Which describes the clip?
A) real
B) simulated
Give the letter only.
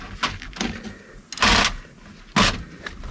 A